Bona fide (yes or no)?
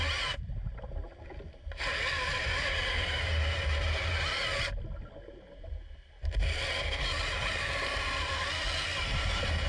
yes